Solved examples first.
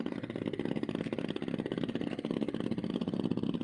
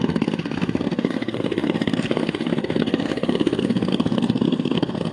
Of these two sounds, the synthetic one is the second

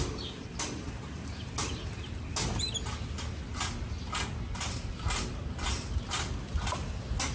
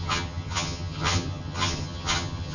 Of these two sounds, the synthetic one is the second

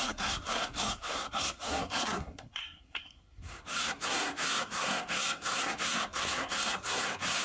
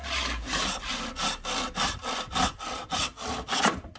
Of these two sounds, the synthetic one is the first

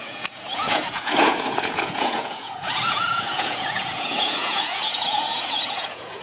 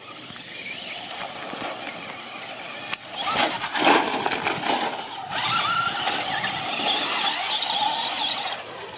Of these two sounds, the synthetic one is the first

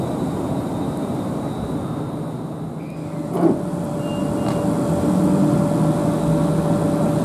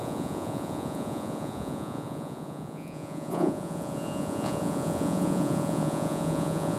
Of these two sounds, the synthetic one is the second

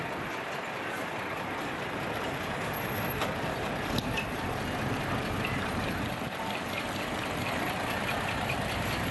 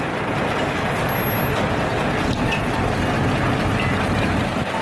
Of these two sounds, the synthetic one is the first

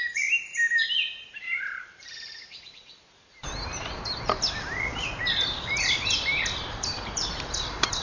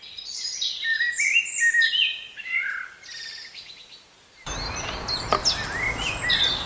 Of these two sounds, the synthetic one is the first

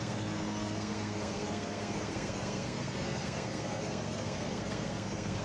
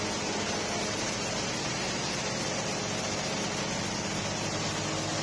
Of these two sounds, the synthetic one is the first